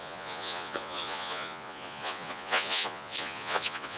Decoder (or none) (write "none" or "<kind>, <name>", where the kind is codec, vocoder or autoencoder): vocoder, Vocos